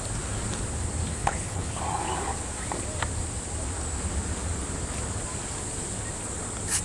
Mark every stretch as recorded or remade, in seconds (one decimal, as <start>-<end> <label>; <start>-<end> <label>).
0.0-1.1 recorded; 1.1-1.8 remade; 1.8-6.8 recorded